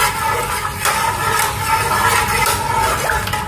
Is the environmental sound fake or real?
real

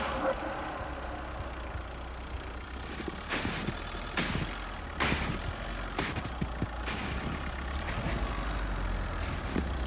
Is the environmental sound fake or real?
real